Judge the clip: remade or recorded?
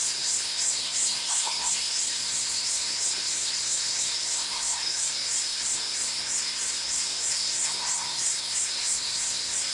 remade